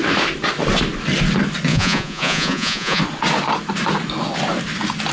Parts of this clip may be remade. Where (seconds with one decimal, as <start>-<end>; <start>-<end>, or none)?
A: 1.7-3.0

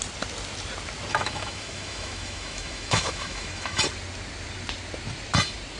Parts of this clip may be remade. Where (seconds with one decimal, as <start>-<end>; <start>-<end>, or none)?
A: 1.1-3.8

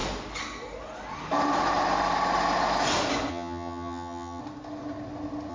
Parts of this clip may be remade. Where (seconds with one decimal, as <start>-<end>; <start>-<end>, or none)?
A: 3.3-4.4

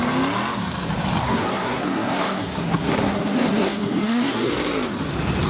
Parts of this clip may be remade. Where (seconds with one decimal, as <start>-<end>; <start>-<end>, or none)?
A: 1.2-4.5